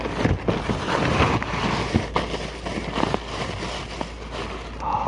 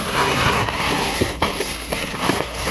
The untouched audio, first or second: first